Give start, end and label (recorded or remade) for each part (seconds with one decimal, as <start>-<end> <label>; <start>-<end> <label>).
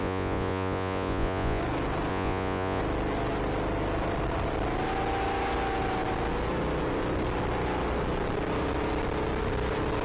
0.0-1.6 remade; 1.6-2.1 recorded; 2.1-2.8 remade; 2.8-10.0 recorded